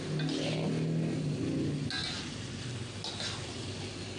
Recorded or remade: recorded